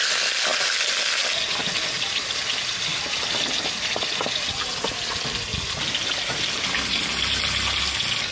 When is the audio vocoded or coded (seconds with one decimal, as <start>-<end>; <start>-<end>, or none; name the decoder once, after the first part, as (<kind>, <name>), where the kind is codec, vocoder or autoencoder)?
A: 2.9-4.5 (vocoder, BigVGAN v2)